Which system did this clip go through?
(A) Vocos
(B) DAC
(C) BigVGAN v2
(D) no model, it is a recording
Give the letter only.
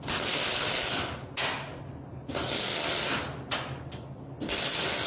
D